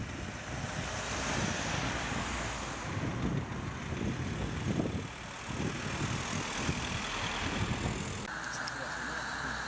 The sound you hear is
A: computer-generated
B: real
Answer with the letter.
B